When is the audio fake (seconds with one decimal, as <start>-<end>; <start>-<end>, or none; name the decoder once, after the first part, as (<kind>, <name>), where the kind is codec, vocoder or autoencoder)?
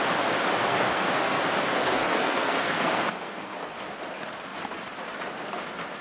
0.6-1.4 (codec, SNAC); 1.8-3.7